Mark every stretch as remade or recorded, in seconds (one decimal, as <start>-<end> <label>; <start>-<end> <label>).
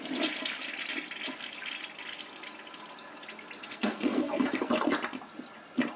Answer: 0.0-3.6 recorded; 3.6-4.7 remade; 4.7-6.0 recorded